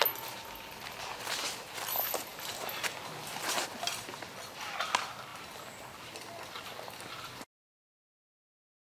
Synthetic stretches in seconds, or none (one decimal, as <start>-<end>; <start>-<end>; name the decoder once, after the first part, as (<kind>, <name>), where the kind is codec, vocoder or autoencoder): none